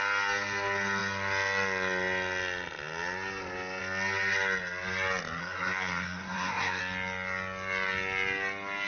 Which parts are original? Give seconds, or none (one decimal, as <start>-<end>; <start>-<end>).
0.0-5.4; 6.8-8.9